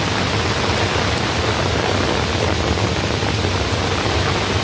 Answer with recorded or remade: recorded